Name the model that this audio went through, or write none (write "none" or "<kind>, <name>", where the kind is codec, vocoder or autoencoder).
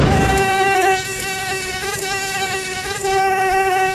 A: codec, DAC